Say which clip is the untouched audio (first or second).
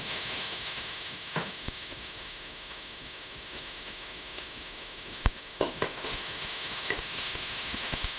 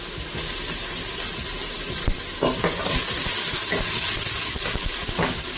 second